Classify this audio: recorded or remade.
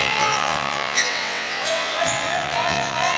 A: remade